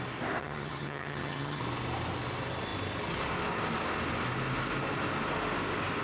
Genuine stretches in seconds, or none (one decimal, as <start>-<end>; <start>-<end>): 0.0-0.4; 1.6-6.0